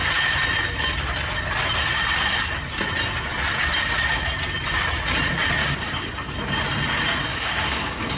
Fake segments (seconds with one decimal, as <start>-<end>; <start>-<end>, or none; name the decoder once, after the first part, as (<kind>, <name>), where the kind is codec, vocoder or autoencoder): 5.6-6.1 (codec, DAC); 7.3-8.2